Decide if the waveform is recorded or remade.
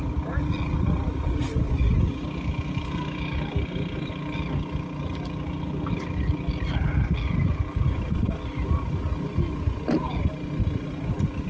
recorded